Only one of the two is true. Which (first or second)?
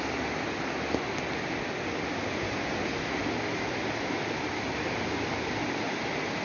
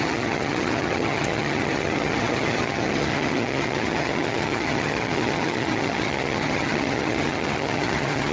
first